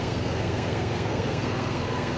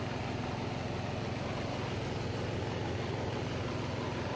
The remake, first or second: first